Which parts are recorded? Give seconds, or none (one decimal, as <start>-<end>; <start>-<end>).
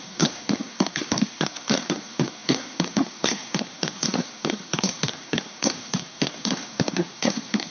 none